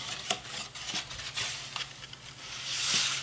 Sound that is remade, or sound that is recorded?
recorded